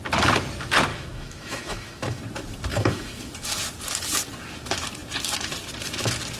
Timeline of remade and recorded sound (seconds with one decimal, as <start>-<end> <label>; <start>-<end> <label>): 0.0-0.9 recorded; 0.9-2.2 remade; 2.2-2.7 recorded; 2.7-3.3 remade; 3.3-6.4 recorded